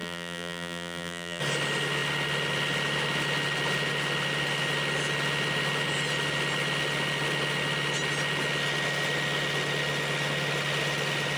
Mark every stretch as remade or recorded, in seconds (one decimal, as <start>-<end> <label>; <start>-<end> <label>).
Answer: 0.0-1.4 remade; 1.4-11.4 recorded